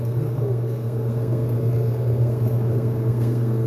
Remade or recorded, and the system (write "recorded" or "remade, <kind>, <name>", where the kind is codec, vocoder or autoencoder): remade, codec, SNAC